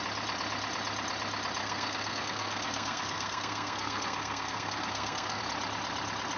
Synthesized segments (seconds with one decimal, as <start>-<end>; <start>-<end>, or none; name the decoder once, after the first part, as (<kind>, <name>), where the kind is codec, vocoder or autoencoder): 1.6-5.4 (codec, SNAC)